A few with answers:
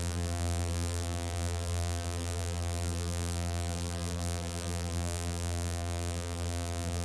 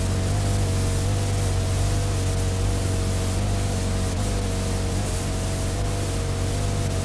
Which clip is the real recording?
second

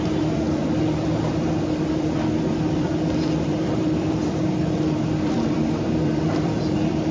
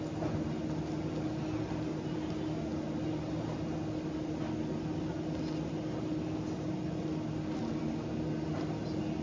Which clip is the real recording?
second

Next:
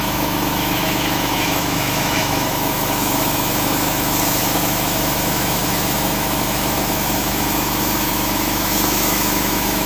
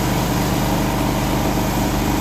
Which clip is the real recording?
second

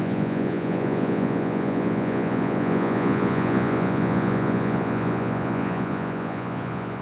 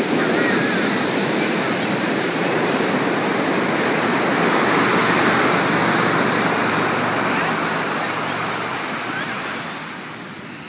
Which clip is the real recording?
second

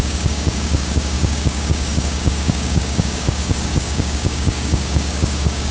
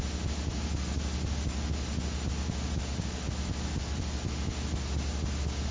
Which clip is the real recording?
second